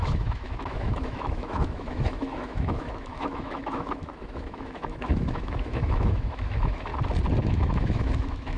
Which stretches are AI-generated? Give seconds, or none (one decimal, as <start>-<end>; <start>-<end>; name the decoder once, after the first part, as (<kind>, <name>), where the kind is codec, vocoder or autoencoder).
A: 0.0-6.9 (autoencoder, DAC-VAE); 7.4-8.6